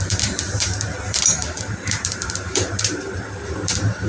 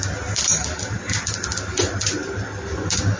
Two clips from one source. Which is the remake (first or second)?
first